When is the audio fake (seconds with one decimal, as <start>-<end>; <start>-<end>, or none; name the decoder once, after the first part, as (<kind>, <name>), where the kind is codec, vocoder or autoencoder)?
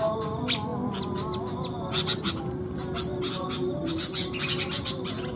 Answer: none